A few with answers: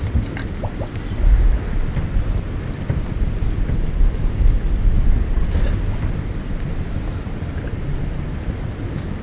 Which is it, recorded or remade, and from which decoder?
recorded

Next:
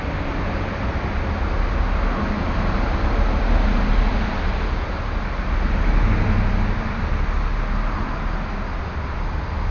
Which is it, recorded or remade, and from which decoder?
recorded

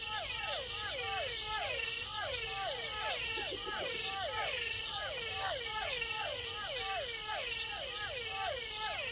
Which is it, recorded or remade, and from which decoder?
recorded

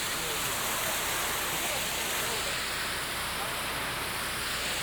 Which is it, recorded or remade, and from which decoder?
recorded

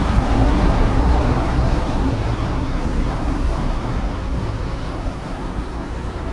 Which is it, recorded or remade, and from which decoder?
remade, codec, SNAC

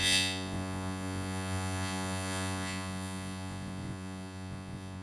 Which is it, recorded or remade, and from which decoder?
remade, vocoder, Vocos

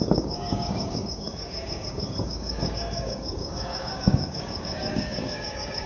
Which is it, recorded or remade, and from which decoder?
remade, codec, DAC